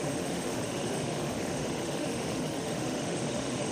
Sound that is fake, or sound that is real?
fake